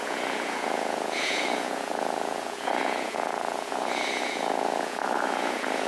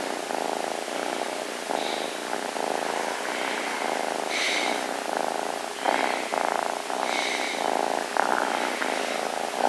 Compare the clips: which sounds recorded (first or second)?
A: second